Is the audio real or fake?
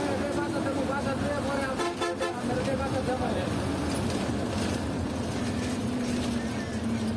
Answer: real